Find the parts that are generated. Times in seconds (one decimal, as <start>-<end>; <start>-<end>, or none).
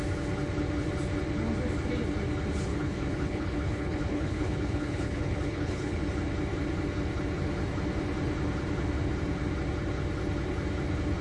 2.7-6.0